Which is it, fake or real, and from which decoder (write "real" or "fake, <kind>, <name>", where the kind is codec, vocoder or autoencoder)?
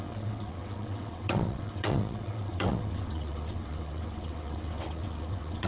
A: fake, vocoder, WaveNeXt